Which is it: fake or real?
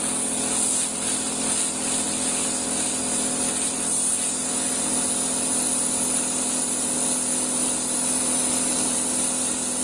real